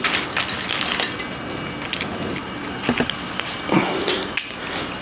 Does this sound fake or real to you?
real